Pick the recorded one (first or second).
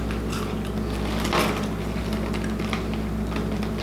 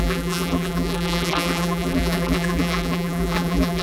first